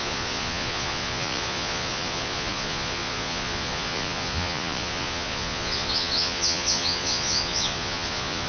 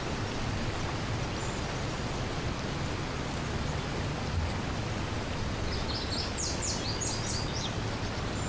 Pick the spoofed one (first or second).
first